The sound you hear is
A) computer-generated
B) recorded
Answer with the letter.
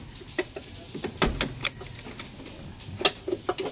B